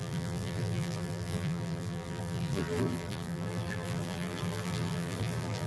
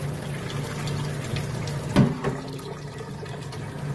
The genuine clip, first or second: second